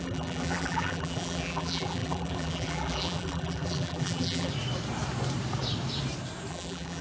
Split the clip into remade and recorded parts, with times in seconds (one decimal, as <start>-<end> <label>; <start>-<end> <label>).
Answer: 0.0-4.5 remade; 4.5-6.5 recorded; 6.5-7.0 remade